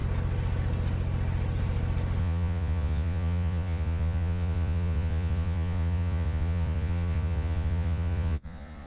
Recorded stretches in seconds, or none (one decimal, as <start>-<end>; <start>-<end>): 0.0-2.2